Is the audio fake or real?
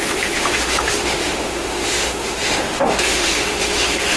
fake